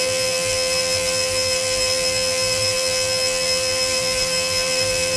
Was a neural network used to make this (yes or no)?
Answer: yes